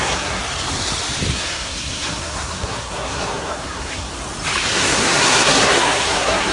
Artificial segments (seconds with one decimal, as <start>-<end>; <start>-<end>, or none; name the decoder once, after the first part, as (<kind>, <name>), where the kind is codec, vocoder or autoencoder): 0.0-0.4 (codec, SNAC); 1.3-4.1; 4.7-6.5